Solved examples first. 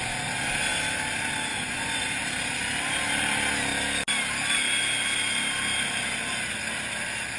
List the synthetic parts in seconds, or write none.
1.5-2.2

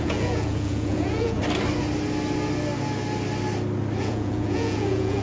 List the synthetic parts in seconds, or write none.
0.0-1.4; 4.0-5.2

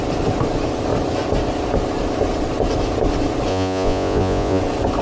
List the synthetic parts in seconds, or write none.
3.5-4.6